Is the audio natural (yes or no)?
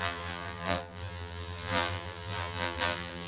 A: no